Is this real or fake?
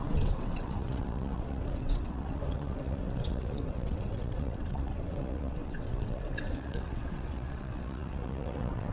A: fake